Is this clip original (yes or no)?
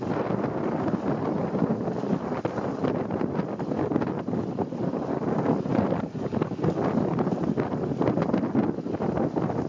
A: yes